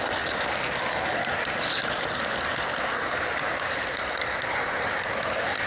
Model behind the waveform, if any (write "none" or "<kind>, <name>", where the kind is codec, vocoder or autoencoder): none